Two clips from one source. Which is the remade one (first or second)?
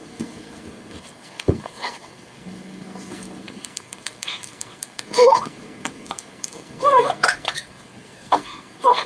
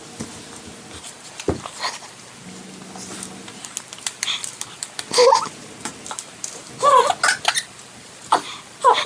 first